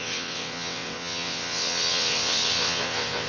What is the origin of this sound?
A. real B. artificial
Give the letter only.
B